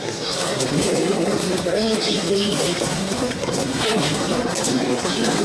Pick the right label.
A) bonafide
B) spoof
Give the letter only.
B